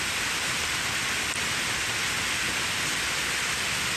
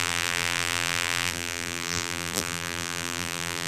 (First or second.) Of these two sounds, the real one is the first